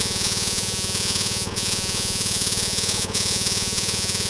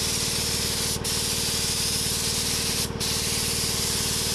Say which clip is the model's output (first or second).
first